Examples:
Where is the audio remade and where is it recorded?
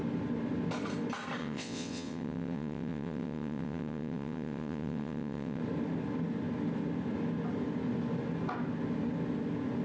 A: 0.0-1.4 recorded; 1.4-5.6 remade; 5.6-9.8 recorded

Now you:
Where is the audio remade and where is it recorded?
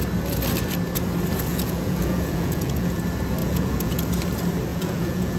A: 0.0-1.5 recorded; 1.5-3.0 remade; 3.0-3.4 recorded; 3.4-4.0 remade; 4.0-4.7 recorded; 4.7-5.4 remade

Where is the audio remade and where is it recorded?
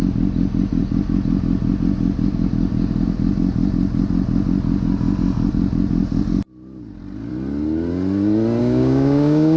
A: 0.0-8.6 recorded; 8.6-9.6 remade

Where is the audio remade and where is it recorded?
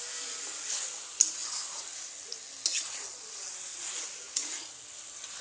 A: 0.0-5.4 recorded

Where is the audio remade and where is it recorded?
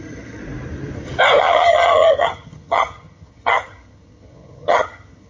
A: 0.0-0.4 remade; 0.4-1.4 recorded; 1.4-5.3 remade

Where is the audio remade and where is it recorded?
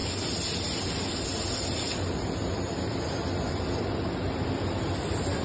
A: 0.0-1.5 recorded; 1.5-5.4 remade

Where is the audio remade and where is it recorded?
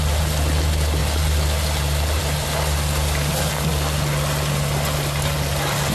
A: 0.0-5.9 recorded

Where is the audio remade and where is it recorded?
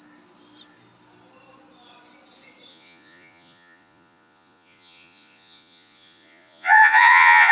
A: 0.0-2.7 recorded; 2.7-7.5 remade